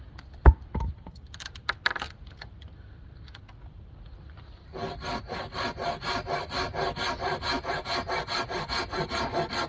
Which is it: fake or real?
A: real